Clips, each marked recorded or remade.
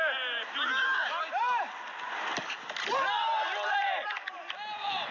recorded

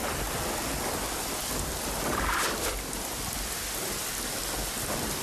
remade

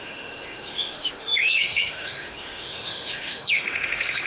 remade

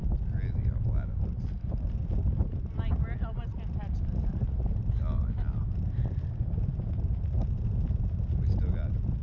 recorded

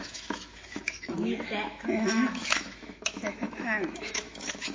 remade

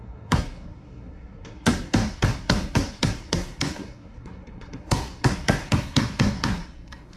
remade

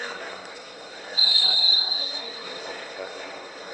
remade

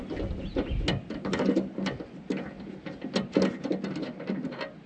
recorded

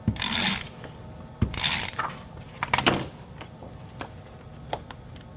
recorded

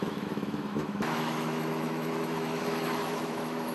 remade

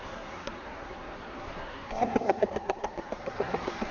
remade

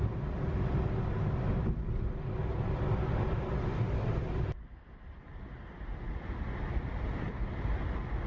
recorded